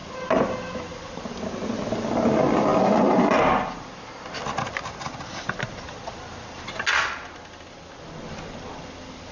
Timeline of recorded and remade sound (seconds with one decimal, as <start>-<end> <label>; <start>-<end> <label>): 0.0-9.3 recorded